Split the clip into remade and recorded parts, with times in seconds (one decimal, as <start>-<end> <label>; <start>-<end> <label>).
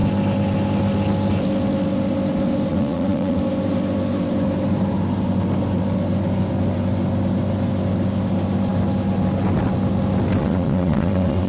0.0-2.7 recorded; 2.7-3.4 remade; 3.4-10.4 recorded; 10.4-11.5 remade